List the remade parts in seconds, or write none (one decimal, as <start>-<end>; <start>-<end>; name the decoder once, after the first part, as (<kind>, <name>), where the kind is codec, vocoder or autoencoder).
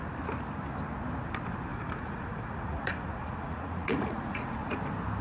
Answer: 1.7-4.8 (vocoder, Vocos)